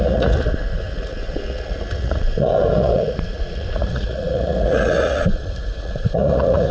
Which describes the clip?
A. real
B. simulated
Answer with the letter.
B